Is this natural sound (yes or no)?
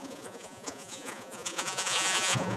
no